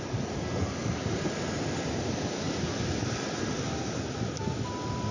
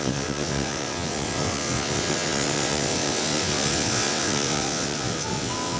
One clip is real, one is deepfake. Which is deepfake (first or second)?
second